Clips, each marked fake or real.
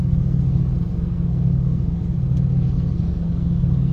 fake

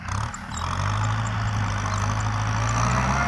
real